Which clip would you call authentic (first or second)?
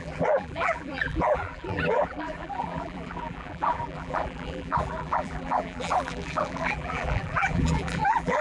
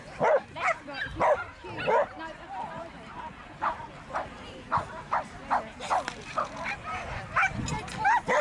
second